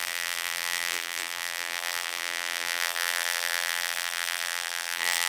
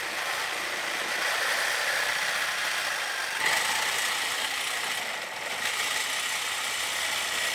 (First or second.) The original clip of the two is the second